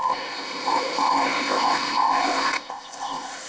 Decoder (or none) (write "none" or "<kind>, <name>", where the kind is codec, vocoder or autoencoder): codec, ZipCodec